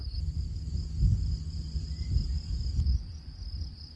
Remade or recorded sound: recorded